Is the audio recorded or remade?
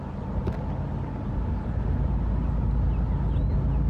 recorded